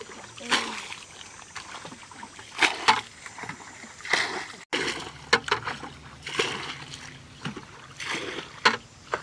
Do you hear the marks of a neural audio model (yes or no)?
no